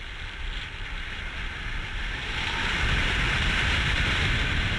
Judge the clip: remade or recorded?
remade